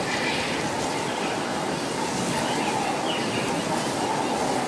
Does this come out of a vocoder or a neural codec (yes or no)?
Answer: no